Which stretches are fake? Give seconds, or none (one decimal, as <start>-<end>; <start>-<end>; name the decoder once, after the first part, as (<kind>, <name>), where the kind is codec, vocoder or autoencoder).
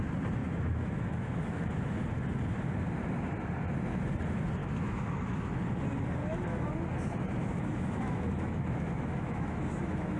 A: 0.4-1.9 (autoencoder, DAC-VAE); 4.6-5.6; 6.2-6.7; 7.4-10.2